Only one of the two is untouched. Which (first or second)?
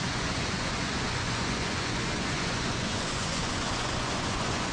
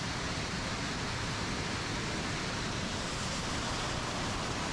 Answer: second